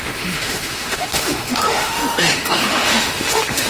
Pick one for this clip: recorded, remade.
remade